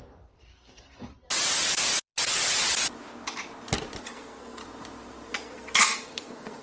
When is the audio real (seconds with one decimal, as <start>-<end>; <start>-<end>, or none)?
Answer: 1.1-4.0; 4.6-5.3